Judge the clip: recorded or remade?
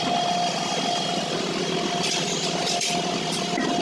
recorded